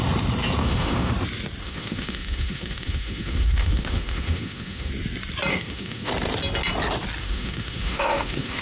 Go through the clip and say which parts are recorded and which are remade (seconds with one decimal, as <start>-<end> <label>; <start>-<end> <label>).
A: 0.0-0.6 recorded; 0.6-1.1 remade; 1.1-1.6 recorded; 1.6-4.9 remade; 4.9-5.5 recorded; 5.5-6.1 remade; 6.1-7.2 recorded; 7.2-8.6 remade